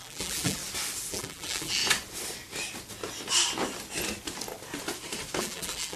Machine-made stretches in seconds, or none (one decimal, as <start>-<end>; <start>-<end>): 0.0-0.6; 1.1-1.8; 5.4-6.0